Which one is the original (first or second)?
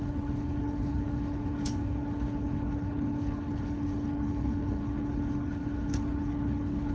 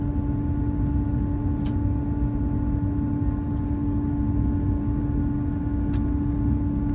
second